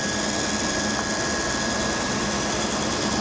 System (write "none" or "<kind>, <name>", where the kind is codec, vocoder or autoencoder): none